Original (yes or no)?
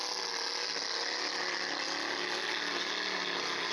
yes